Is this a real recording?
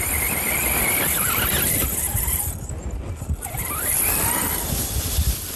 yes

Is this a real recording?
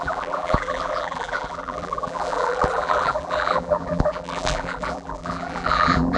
no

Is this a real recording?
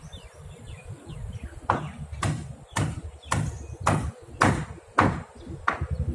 yes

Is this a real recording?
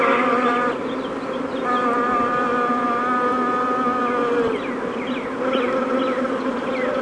yes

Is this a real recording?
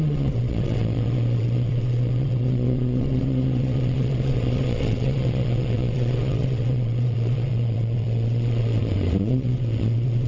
no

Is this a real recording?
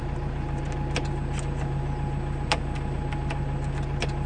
yes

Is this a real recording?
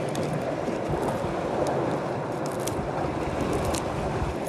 yes